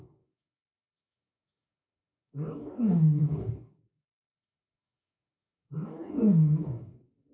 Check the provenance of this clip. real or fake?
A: fake